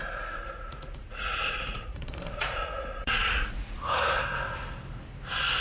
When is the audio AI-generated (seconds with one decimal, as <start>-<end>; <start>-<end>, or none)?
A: 0.0-3.8